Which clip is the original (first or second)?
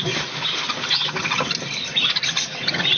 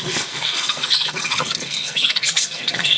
first